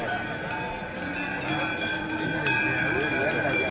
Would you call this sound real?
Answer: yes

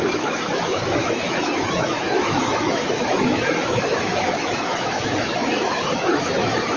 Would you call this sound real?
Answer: no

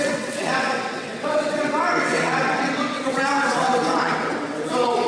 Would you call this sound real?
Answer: no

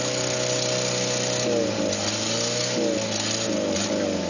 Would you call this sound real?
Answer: yes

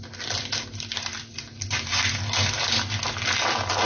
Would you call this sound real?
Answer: yes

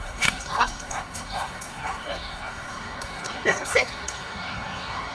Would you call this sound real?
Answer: no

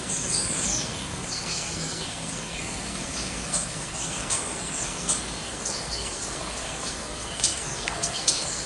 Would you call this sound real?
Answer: no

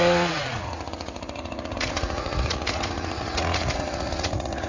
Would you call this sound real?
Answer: no